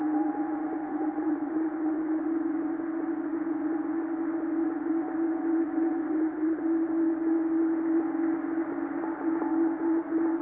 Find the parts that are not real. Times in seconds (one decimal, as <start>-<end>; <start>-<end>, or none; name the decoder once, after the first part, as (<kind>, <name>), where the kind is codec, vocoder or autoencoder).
0.8-2.3 (vocoder, WaveNeXt); 6.0-6.6